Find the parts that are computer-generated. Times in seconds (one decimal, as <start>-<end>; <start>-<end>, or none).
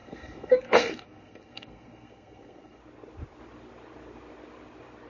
0.0-2.8